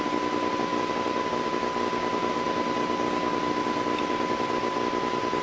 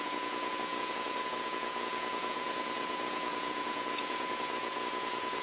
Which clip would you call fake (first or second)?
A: second